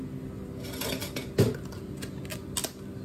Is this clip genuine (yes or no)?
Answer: yes